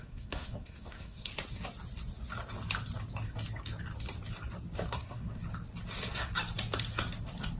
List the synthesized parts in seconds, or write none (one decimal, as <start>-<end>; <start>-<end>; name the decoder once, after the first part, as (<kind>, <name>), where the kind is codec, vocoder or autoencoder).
0.0-1.3 (codec, SNAC); 4.9-5.4

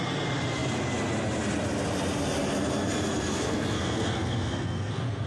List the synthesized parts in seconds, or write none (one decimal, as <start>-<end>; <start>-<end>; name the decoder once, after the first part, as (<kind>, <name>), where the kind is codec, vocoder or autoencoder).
3.3-5.3 (codec, SNAC)

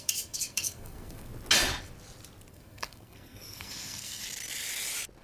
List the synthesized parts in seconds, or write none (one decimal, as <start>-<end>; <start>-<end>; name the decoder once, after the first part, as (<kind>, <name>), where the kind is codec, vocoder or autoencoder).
0.0-1.3 (codec, SNAC); 2.5-4.2

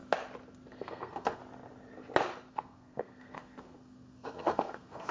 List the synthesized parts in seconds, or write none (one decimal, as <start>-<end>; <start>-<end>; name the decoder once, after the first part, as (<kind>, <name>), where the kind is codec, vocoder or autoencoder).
0.8-1.4 (codec, SNAC); 2.5-5.1

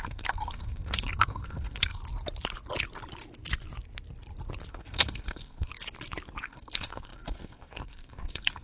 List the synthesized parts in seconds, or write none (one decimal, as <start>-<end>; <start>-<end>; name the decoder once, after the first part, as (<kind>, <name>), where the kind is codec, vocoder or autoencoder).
0.0-2.0 (codec, SNAC); 4.7-5.7; 6.4-8.6

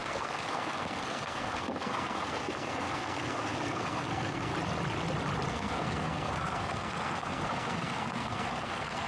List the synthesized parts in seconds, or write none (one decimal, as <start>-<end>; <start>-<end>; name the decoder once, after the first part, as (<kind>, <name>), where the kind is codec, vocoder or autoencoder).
0.0-4.5 (codec, SNAC); 5.5-9.1

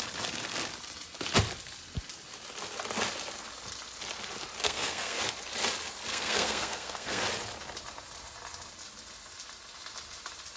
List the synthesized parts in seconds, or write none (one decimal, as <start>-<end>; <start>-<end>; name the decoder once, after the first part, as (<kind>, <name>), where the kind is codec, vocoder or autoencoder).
4.6-5.2 (codec, SNAC); 6.1-7.2

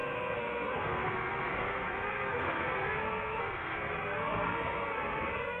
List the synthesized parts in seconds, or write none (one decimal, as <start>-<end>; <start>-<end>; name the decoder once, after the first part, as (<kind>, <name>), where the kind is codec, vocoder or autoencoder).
0.0-5.6 (codec, SNAC)